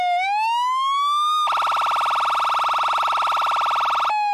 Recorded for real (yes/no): yes